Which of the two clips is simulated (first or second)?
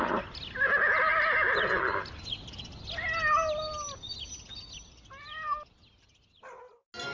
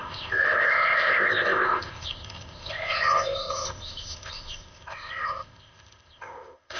second